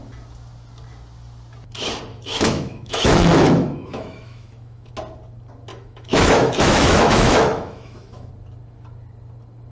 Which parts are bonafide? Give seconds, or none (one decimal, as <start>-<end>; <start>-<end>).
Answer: 0.0-2.1; 4.9-5.7; 8.3-9.7